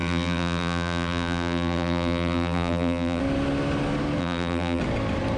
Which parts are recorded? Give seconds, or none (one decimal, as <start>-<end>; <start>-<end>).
3.2-4.2; 4.8-5.4

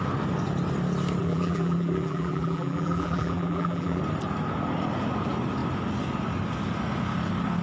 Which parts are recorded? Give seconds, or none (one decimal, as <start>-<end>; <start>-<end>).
0.0-1.2; 4.0-7.6

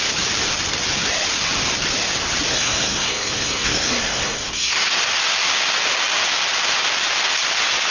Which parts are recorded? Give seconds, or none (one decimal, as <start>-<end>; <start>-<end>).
0.0-2.5; 5.0-7.9

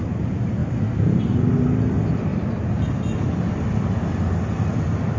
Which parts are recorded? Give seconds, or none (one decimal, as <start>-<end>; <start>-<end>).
0.0-5.2

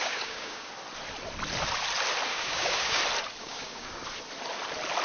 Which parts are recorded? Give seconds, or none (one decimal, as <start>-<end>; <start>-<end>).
0.7-2.3; 3.0-3.4; 4.0-5.0